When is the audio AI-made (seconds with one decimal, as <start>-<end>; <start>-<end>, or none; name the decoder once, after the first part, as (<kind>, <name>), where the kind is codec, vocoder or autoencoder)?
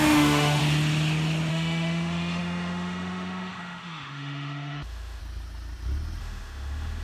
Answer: 0.0-0.6 (autoencoder, DAC-VAE); 1.5-5.2; 6.2-7.0